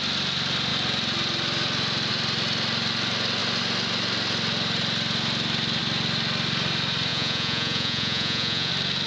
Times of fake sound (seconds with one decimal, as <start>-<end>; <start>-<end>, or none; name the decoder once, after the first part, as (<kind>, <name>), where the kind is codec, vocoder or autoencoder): 7.1-8.7 (vocoder, Vocos)